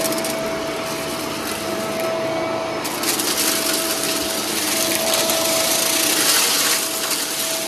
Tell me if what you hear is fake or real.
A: real